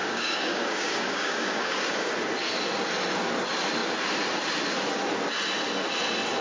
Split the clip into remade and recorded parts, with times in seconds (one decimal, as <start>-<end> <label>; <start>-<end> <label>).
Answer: 0.0-2.1 remade; 2.1-6.4 recorded